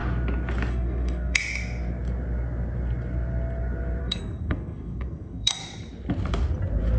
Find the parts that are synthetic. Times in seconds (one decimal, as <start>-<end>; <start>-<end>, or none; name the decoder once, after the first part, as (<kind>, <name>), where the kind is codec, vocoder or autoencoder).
0.7-1.4 (codec, SNAC); 4.0-5.6